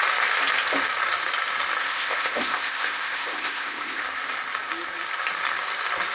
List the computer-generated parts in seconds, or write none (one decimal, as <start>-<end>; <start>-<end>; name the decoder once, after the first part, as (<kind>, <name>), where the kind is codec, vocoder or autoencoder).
1.8-4.0 (codec, ZipCodec)